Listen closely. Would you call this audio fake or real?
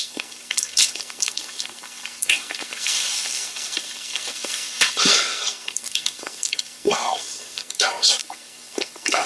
fake